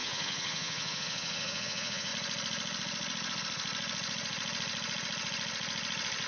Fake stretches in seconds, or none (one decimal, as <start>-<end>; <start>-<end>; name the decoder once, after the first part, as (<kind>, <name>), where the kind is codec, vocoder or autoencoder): 0.0-2.1 (vocoder, Vocos)